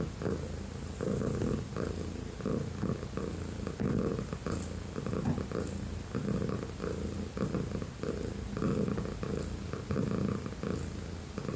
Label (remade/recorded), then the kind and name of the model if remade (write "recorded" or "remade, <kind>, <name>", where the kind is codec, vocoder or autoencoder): recorded